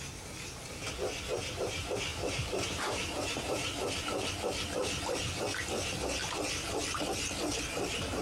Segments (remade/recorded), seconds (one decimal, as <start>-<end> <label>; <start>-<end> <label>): 0.0-2.1 recorded; 2.1-4.0 remade; 4.0-6.2 recorded; 6.2-6.8 remade; 6.8-8.2 recorded